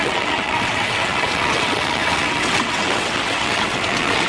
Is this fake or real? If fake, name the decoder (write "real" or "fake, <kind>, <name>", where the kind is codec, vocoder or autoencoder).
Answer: fake, vocoder, WaveNeXt